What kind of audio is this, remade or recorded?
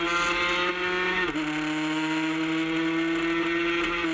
recorded